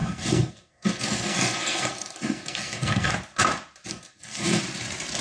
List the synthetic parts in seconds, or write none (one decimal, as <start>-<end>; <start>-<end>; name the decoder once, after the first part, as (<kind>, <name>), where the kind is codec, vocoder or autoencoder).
0.0-3.1 (codec, SNAC); 3.9-4.6